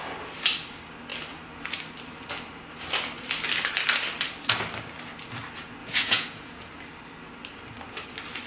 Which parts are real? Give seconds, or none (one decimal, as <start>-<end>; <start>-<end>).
0.0-5.8; 6.7-8.5